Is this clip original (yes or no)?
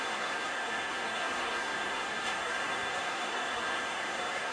no